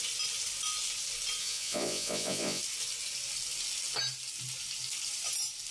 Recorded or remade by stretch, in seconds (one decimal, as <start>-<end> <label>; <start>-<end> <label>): 0.0-1.4 recorded; 1.4-2.6 remade; 2.6-5.7 recorded